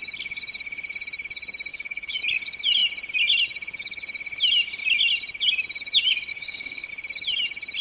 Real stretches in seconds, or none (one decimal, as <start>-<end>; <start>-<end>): 0.0-1.7; 2.2-6.3; 6.9-7.8